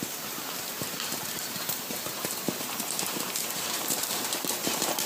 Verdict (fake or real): fake